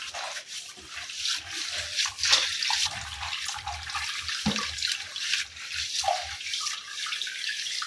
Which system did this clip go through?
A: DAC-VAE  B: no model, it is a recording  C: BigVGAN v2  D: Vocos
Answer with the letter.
B